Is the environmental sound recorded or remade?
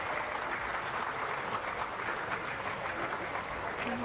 recorded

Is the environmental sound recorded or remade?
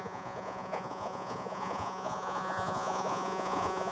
remade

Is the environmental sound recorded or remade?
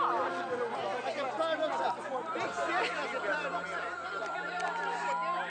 recorded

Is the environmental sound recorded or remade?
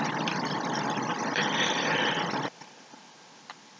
recorded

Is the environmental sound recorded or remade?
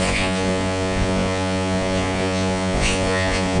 remade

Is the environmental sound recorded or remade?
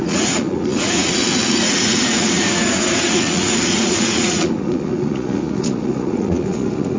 remade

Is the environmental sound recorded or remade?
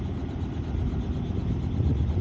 recorded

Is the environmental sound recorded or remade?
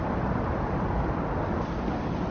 recorded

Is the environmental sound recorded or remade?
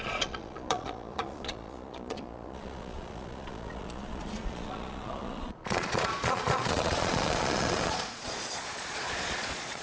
remade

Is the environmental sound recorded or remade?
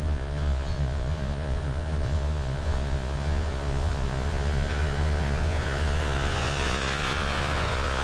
remade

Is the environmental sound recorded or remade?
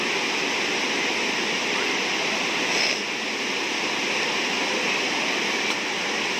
recorded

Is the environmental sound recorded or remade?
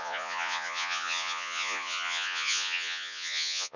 remade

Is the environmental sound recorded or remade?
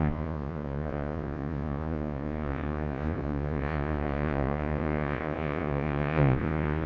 remade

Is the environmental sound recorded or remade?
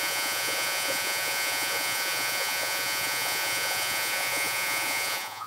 remade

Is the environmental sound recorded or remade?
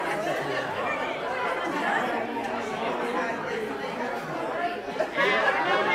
recorded